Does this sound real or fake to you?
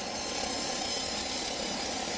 real